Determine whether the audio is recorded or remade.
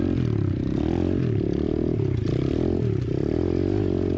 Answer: recorded